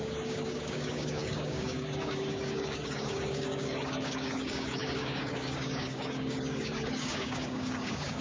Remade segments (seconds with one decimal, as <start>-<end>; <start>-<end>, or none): 0.0-8.2